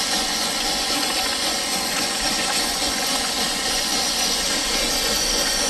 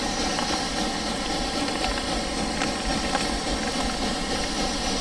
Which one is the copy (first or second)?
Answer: first